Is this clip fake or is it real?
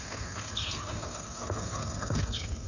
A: fake